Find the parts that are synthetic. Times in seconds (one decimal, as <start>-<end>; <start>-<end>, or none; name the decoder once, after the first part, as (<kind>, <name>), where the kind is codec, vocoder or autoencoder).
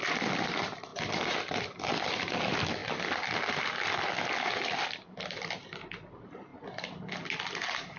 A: none